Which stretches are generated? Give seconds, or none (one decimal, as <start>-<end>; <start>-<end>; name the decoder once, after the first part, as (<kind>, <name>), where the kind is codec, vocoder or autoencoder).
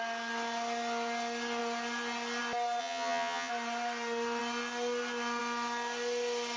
2.8-3.5 (vocoder, HiFi-GAN)